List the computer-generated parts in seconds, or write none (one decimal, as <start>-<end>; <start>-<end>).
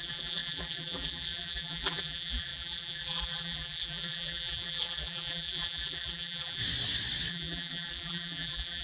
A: 0.0-6.6; 7.3-8.8